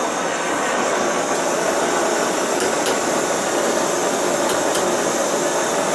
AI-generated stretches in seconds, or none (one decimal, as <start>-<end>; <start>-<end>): none